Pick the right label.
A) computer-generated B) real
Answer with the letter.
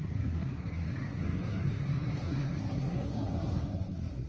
A